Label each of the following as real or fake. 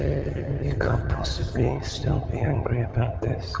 fake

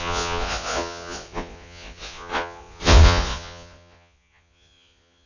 fake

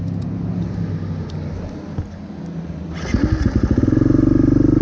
real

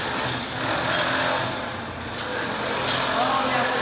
real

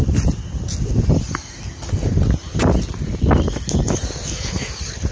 real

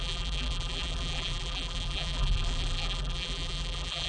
fake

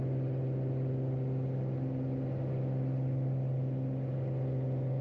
real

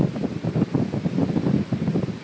fake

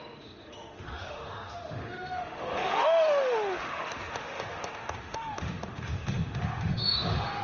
fake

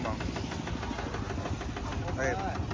real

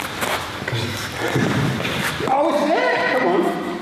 real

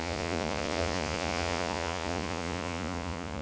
fake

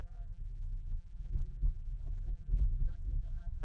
fake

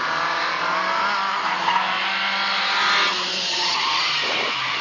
real